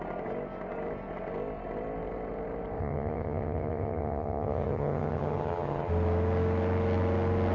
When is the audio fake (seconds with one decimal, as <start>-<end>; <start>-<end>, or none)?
2.8-5.9